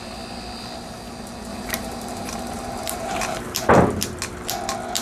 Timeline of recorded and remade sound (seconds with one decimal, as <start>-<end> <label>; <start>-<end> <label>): 0.0-1.5 recorded; 1.5-3.7 remade; 3.7-5.0 recorded